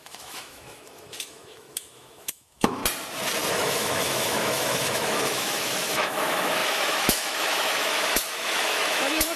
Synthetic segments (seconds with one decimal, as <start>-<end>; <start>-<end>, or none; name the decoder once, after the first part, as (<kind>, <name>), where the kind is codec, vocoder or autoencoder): 0.0-2.8 (autoencoder, DAC-VAE); 3.5-9.4